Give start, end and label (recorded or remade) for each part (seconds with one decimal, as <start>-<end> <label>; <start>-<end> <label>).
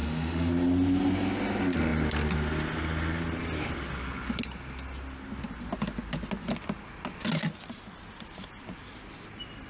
0.0-0.5 remade; 0.5-9.7 recorded